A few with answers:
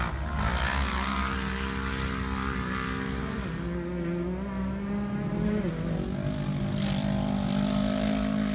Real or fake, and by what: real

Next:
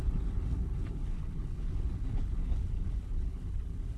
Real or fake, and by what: fake, codec, HILCodec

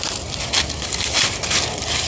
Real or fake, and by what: real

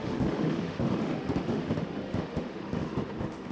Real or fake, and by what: fake, autoencoder, DAC-VAE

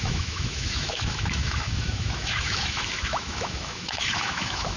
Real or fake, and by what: fake, autoencoder, DAC-VAE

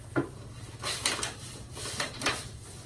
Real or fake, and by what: real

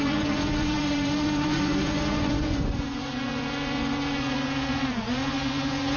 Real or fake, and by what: fake, vocoder, Vocos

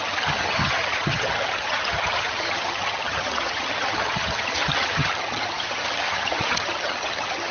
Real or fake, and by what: fake, vocoder, HiFi-GAN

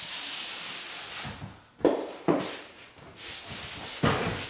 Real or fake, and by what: real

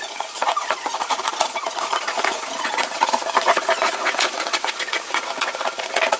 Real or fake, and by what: fake, vocoder, Vocos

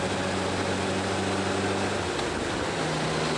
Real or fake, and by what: real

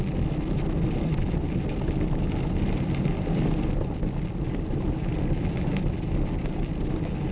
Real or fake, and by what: real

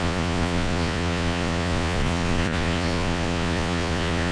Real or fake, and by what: fake, vocoder, Vocos